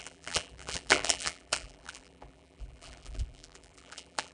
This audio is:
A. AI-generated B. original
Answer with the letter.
A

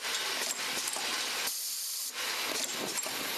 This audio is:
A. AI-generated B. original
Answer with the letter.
B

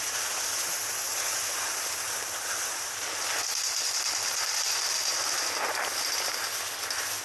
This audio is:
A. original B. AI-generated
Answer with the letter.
A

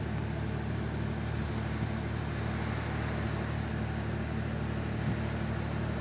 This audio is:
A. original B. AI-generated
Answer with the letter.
A